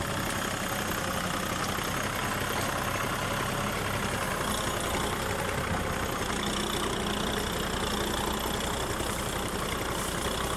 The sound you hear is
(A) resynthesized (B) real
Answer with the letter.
B